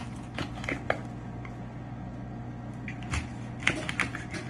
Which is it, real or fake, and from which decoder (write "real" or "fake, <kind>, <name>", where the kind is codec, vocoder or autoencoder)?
real